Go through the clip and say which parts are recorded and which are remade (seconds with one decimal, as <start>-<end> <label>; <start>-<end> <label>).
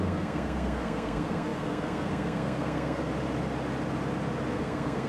0.0-3.0 remade; 3.0-4.5 recorded; 4.5-5.1 remade